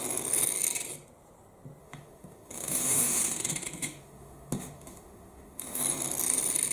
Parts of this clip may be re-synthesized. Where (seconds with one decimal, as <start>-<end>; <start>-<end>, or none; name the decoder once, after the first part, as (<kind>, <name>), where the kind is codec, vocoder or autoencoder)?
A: 1.8-5.8 (autoencoder, DAC-VAE)